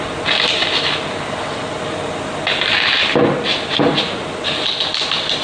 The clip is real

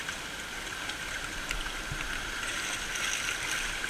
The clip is fake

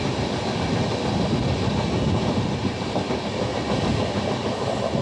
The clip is real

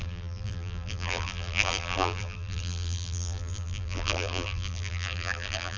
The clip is fake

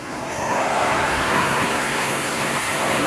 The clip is fake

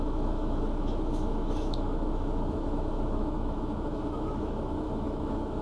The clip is fake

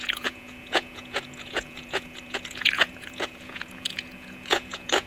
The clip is fake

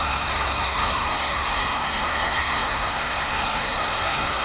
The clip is fake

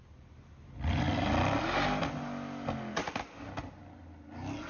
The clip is real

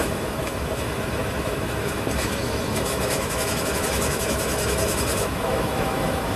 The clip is fake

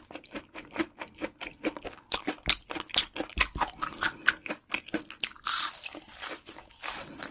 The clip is real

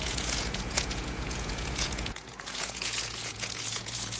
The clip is fake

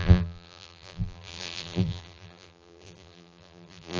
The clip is fake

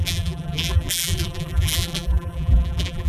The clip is fake